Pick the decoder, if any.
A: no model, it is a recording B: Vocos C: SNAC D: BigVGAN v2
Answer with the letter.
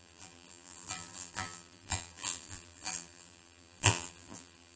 D